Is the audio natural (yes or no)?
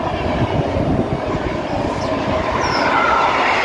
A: yes